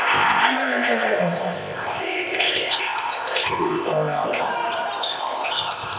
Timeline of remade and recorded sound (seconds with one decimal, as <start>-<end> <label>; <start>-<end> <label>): 0.0-4.5 remade; 4.5-5.0 recorded; 5.0-6.0 remade

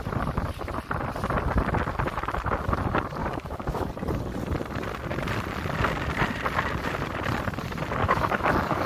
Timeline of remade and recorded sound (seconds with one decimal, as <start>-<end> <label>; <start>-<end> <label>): 0.0-3.2 recorded; 3.2-3.9 remade; 3.9-8.0 recorded; 8.0-8.9 remade

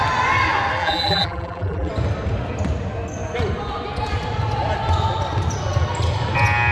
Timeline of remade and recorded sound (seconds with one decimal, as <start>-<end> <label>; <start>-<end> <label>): 0.0-0.8 recorded; 0.8-1.9 remade; 1.9-6.7 recorded

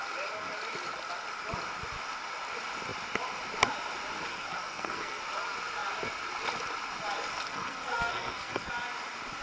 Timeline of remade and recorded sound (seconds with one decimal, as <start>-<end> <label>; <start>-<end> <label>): 0.0-4.3 recorded; 4.3-5.2 remade; 5.2-7.3 recorded; 7.3-8.7 remade; 8.7-9.4 recorded